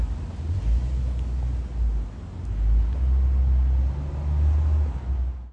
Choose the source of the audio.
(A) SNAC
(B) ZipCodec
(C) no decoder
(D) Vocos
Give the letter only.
C